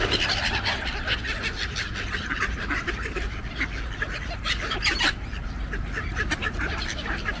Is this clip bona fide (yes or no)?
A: yes